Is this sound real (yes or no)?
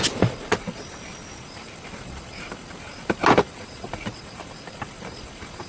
yes